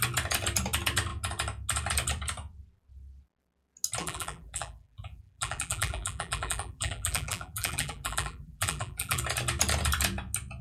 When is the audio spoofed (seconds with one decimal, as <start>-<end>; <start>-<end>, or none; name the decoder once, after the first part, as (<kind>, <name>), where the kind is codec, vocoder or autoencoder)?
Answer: 4.0-9.2 (vocoder, BigVGAN v2)